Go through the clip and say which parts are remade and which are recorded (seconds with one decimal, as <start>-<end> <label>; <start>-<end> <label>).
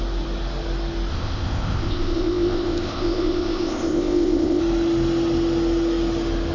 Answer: 0.0-1.1 recorded; 1.1-4.6 remade; 4.6-6.5 recorded